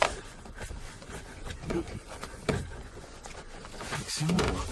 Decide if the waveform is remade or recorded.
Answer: remade